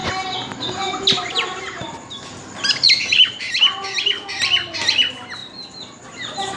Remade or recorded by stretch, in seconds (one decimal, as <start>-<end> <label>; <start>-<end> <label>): 0.0-6.6 recorded